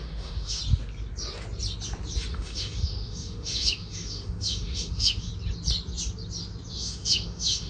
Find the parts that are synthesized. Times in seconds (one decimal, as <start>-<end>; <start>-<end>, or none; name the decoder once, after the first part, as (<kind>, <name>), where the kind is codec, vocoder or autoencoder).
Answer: 0.0-0.6 (autoencoder, DAC-VAE); 2.3-5.3; 6.7-7.7